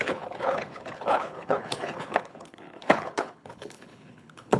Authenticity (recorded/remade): remade